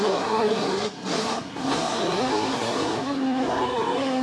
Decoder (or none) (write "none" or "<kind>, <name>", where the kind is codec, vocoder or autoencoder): codec, SNAC